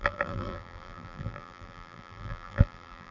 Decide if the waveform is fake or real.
fake